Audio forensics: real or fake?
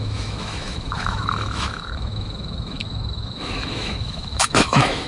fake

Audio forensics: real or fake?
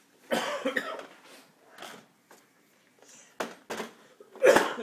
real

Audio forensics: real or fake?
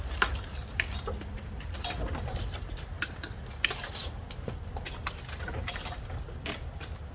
real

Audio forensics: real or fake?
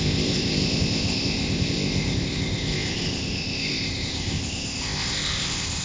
fake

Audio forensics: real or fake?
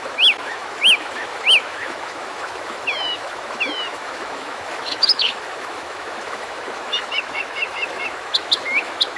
fake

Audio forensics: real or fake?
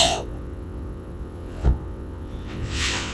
fake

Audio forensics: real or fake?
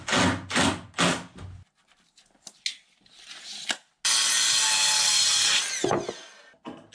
real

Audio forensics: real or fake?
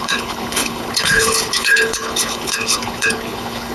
fake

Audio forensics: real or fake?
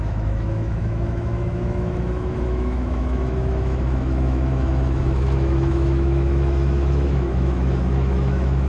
fake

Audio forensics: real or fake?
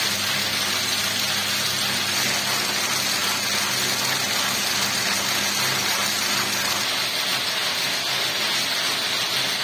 real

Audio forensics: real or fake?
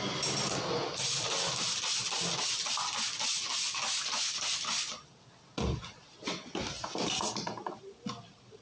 real